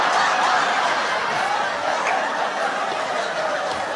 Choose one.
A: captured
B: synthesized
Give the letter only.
A